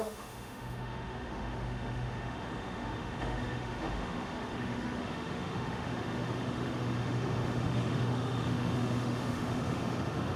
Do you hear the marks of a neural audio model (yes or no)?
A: yes